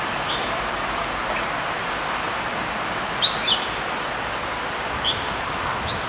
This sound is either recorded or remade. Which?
recorded